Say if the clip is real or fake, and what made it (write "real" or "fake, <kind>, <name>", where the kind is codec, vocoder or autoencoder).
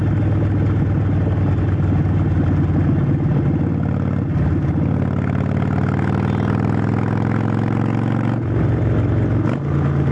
real